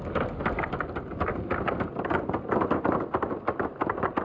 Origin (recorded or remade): recorded